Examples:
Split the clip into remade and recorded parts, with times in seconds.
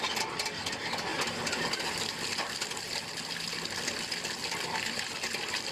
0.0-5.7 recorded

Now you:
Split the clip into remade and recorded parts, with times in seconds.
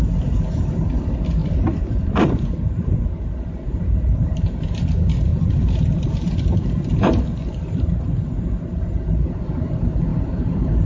0.0-1.4 recorded; 1.4-4.6 remade; 4.6-5.3 recorded; 5.3-9.3 remade; 9.3-10.1 recorded; 10.1-10.9 remade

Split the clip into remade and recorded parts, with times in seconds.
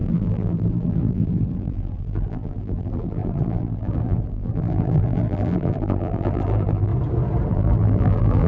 0.0-6.9 remade; 6.9-7.5 recorded; 7.5-8.5 remade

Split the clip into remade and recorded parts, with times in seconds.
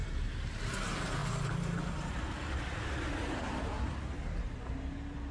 0.0-3.4 recorded; 3.4-3.9 remade; 3.9-5.3 recorded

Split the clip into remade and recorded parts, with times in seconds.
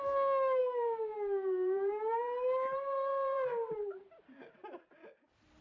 0.0-0.6 recorded; 0.6-4.0 remade; 4.0-5.6 recorded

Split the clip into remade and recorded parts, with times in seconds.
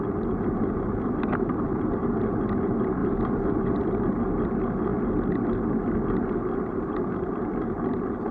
0.0-3.0 recorded; 3.0-4.2 remade; 4.2-8.3 recorded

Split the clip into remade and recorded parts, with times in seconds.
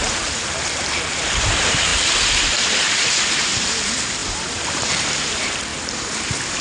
0.0-6.6 remade